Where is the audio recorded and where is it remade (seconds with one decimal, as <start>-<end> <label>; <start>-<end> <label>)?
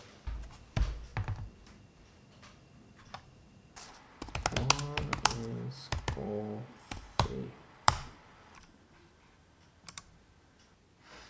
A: 0.0-6.2 recorded; 6.2-10.0 remade; 10.0-11.3 recorded